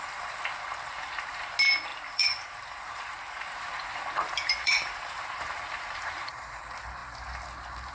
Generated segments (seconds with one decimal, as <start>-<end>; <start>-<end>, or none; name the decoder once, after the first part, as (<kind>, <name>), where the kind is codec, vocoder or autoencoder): 1.9-6.6 (vocoder, BigVGAN v2)